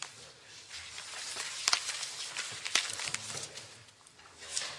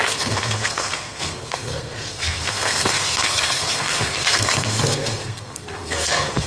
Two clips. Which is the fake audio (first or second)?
second